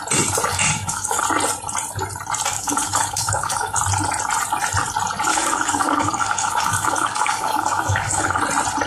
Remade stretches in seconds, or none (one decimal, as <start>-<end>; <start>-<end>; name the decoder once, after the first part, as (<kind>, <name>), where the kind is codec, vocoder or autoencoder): 0.5-1.2 (codec, DAC); 2.5-3.8; 5.3-8.4